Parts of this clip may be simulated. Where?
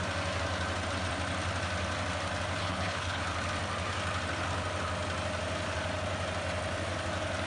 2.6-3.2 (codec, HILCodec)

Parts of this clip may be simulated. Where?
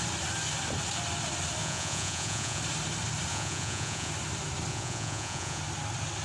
1.6-2.6 (vocoder, Vocos); 3.3-4.1; 4.7-5.6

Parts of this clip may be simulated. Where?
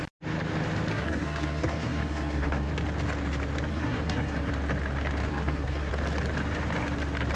0.9-2.7 (codec, SNAC); 3.7-4.5; 5.3-5.9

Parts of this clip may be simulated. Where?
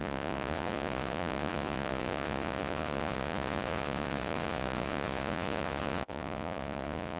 0.0-7.2 (vocoder, Vocos)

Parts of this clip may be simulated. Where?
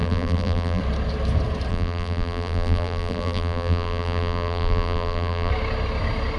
0.0-0.8 (vocoder, BigVGAN v2); 1.7-5.5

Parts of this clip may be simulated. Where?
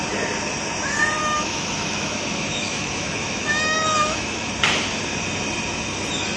1.2-4.5 (autoencoder, DAC-VAE)